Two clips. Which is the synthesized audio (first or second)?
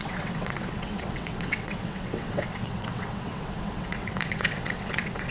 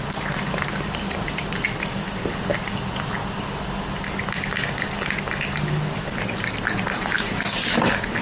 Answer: first